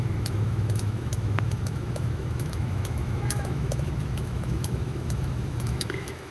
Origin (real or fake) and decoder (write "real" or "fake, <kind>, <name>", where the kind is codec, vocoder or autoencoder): fake, autoencoder, DAC-VAE